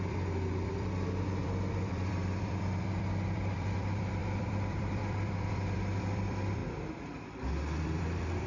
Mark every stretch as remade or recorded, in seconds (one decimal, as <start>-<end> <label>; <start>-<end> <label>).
0.0-6.6 remade; 6.6-7.8 recorded; 7.8-8.5 remade